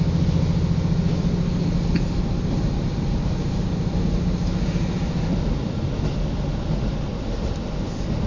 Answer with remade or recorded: recorded